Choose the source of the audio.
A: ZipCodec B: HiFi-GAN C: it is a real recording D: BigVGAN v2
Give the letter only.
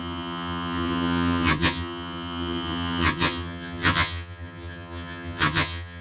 B